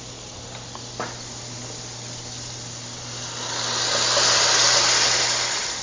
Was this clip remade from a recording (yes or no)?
yes